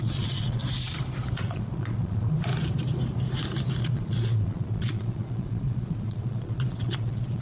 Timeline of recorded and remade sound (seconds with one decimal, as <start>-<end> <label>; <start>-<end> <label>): 0.0-0.6 remade; 0.6-1.4 recorded; 1.4-2.5 remade; 2.5-3.8 recorded; 3.8-7.4 remade